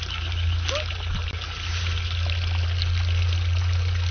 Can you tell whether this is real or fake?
real